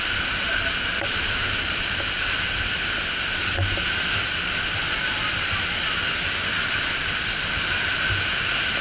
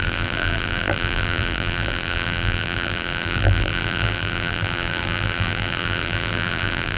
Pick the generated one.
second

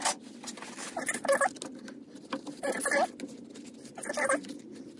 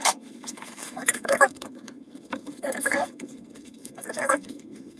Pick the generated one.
second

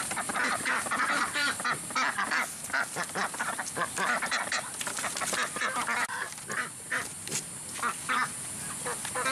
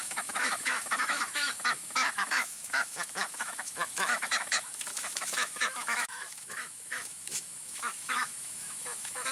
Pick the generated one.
second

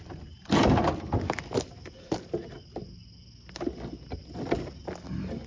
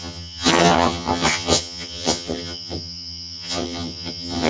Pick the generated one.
second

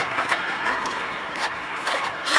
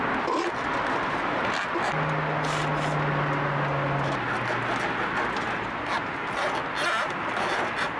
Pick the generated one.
first